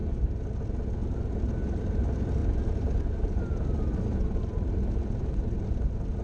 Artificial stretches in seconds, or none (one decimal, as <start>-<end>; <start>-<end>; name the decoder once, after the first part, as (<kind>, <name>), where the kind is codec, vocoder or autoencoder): 0.0-0.5 (vocoder, BigVGAN v2); 2.4-4.7